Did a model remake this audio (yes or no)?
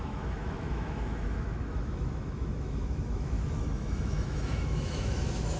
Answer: yes